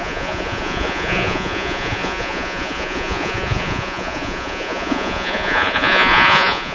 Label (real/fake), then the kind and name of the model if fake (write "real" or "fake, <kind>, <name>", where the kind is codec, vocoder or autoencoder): fake, vocoder, Vocos